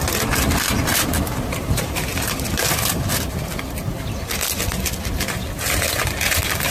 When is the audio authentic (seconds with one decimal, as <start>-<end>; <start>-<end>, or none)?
0.0-6.7